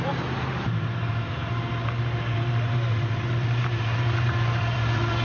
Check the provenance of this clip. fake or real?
fake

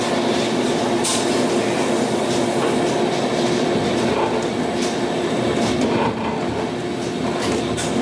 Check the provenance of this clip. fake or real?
real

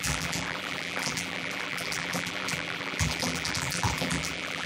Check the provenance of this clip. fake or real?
fake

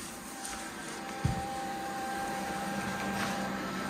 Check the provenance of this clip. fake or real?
fake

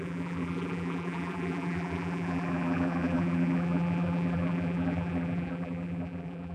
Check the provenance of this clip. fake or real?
fake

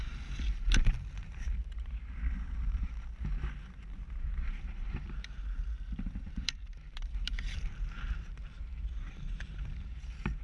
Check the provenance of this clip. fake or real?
fake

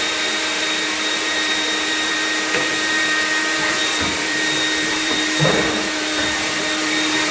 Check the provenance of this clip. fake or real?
fake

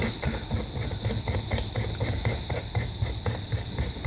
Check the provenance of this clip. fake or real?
real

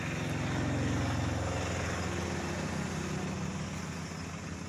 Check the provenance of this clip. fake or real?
real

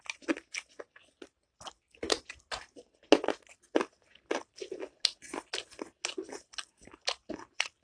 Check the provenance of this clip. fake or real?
real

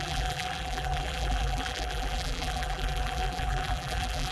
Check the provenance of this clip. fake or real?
fake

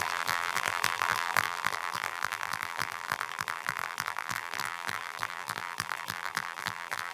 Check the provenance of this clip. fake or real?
fake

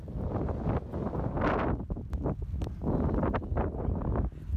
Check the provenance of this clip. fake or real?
real